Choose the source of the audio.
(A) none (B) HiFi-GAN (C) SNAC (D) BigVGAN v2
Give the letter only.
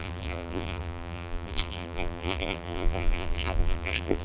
D